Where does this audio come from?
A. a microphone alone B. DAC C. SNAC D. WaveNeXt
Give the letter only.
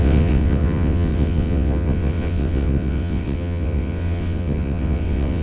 D